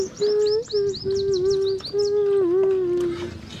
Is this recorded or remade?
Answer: recorded